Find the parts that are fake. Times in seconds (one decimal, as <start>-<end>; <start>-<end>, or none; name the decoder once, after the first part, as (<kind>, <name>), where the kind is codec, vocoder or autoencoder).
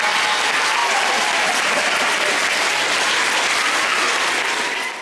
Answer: none